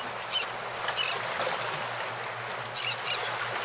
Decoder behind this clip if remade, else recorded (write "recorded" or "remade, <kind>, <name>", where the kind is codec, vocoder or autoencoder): recorded